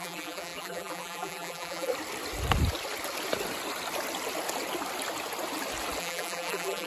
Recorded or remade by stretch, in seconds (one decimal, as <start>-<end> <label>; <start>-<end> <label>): 0.0-1.9 remade; 1.9-6.0 recorded; 6.0-6.9 remade